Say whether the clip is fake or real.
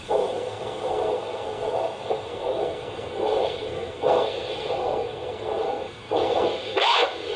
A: fake